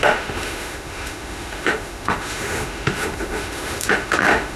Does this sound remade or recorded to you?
remade